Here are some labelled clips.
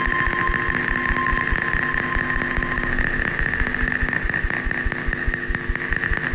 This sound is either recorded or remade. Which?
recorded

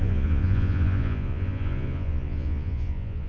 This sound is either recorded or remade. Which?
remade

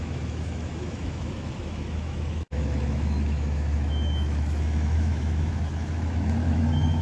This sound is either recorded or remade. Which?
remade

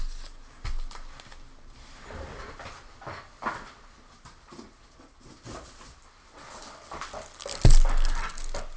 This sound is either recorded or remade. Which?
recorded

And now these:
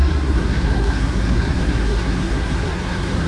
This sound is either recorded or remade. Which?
remade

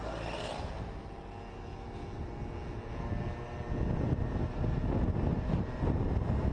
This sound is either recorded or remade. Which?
recorded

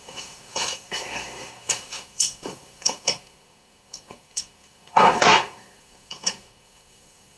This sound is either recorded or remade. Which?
remade